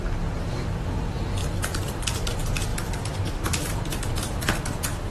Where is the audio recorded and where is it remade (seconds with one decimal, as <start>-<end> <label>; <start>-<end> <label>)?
0.0-1.4 recorded; 1.4-2.3 remade; 2.3-2.7 recorded; 2.7-4.1 remade; 4.1-5.1 recorded